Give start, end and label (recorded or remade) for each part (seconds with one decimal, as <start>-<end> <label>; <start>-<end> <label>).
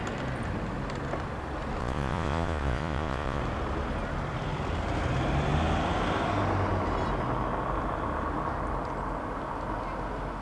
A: 0.0-1.8 recorded; 1.8-3.4 remade; 3.4-10.4 recorded